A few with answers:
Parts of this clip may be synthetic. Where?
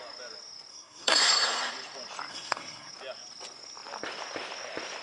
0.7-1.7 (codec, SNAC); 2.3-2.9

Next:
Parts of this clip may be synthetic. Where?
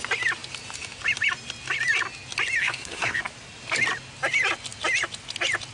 2.6-3.2 (codec, SNAC)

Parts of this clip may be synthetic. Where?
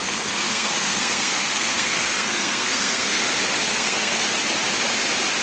0.0-3.2 (codec, SNAC); 3.7-4.3